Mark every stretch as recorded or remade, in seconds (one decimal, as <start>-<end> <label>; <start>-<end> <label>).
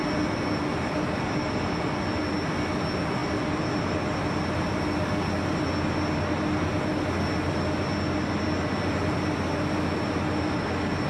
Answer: 0.0-11.1 recorded